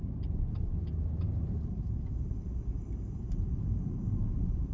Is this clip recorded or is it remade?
remade